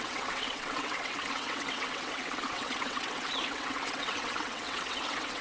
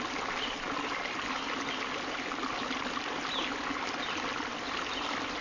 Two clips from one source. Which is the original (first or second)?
second